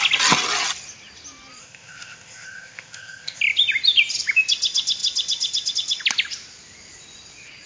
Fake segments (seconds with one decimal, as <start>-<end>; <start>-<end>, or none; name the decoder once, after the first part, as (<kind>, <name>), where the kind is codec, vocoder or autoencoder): 1.6-3.4 (codec, ZipCodec)